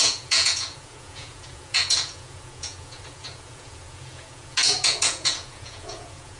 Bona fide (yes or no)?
no